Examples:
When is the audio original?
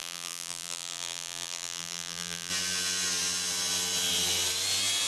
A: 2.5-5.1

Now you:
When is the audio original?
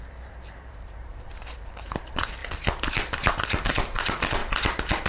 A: 2.4-3.3; 4.4-5.1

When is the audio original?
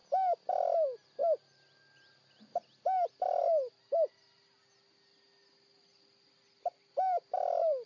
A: 0.0-7.9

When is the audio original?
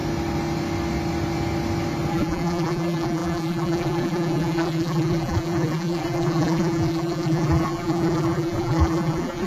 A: 0.0-2.1